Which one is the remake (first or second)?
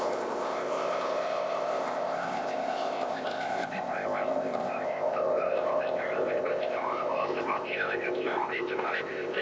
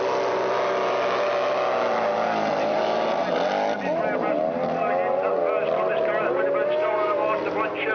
first